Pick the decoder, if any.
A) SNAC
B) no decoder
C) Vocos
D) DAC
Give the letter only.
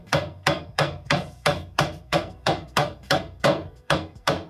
A